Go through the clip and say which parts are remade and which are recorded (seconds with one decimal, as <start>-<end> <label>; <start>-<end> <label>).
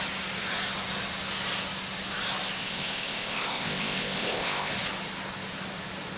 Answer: 0.0-2.6 recorded; 2.6-4.7 remade; 4.7-6.2 recorded